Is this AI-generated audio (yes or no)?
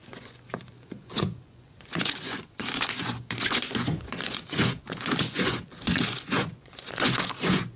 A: yes